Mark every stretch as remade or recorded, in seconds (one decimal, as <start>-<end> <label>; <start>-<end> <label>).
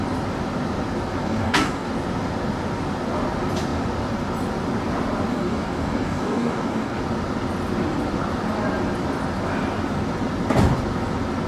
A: 0.0-1.2 recorded; 1.2-1.9 remade; 1.9-5.3 recorded; 5.3-7.0 remade; 7.0-11.5 recorded